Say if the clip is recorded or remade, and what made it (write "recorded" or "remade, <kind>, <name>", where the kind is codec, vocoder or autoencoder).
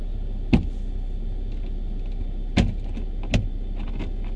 recorded